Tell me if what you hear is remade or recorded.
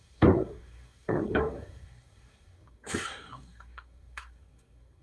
remade